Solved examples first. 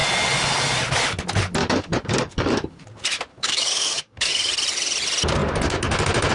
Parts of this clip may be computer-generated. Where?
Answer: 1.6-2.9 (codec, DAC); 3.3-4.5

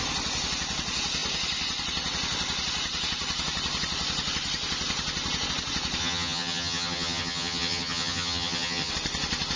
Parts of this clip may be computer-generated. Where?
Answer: 6.0-8.9 (vocoder, HiFi-GAN)

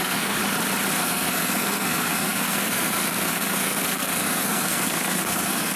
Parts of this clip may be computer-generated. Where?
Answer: 0.0-0.4 (codec, SNAC); 0.9-5.8